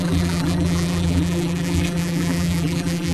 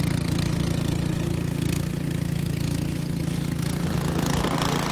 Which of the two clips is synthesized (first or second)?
first